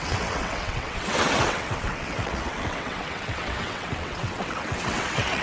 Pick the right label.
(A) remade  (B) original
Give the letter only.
A